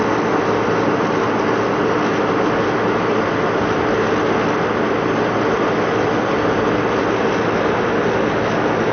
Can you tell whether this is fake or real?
real